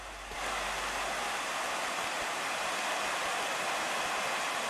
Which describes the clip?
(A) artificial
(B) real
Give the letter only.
B